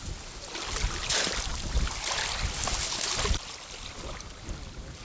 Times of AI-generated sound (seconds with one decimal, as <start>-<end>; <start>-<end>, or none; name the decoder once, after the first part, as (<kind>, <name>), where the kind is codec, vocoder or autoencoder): none